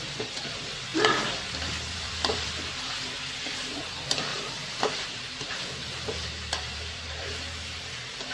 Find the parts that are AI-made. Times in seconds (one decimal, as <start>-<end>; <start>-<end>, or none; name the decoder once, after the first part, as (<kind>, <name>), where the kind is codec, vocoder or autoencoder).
0.0-8.3 (vocoder, BigVGAN v2)